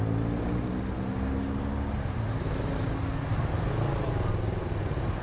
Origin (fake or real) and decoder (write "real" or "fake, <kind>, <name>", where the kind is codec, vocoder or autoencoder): real